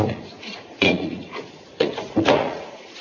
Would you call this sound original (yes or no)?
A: no